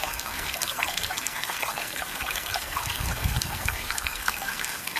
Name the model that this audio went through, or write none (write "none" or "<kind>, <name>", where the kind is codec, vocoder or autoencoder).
codec, SNAC